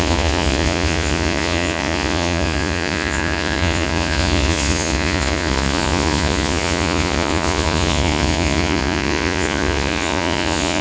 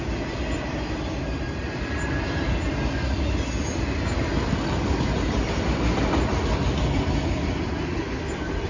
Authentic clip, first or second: second